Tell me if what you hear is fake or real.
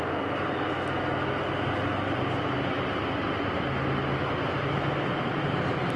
real